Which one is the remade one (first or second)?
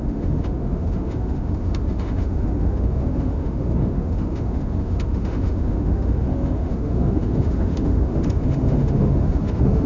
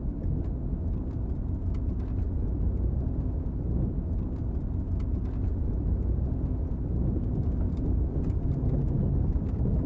first